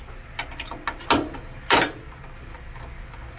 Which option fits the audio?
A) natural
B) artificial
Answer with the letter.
A